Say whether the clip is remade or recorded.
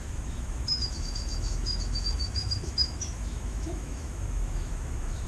remade